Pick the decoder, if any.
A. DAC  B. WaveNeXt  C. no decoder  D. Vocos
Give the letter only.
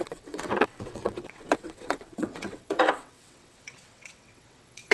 B